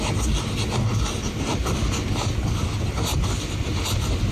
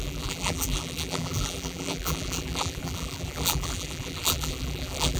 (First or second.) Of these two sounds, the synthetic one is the second